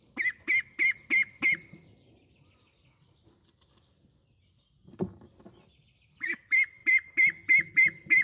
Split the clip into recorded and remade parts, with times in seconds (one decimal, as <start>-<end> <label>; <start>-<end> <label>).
0.0-8.2 recorded